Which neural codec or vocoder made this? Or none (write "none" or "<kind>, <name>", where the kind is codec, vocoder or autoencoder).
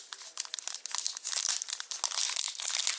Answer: none